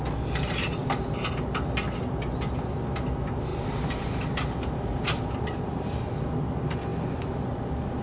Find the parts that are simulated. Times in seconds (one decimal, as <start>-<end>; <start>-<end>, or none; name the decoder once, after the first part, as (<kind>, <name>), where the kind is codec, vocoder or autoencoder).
3.5-6.0 (vocoder, BigVGAN v2)